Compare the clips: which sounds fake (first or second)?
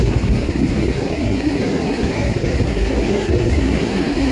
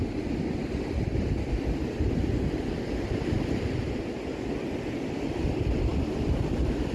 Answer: first